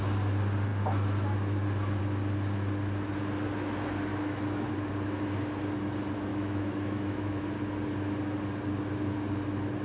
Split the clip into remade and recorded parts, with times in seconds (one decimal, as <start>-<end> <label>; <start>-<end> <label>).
0.0-4.1 recorded; 4.1-4.9 remade; 4.9-6.3 recorded; 6.3-7.4 remade; 7.4-9.8 recorded